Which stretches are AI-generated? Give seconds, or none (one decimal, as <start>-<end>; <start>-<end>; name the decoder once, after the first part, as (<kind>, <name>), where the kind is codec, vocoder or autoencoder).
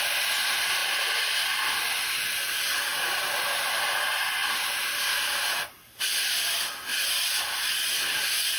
none